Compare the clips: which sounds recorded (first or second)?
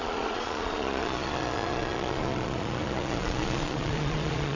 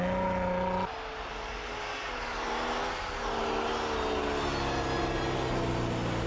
second